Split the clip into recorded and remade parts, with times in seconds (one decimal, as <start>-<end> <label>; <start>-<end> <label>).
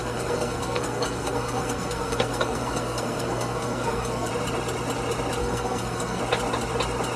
0.0-4.3 remade; 4.3-5.4 recorded; 5.4-6.2 remade; 6.2-7.2 recorded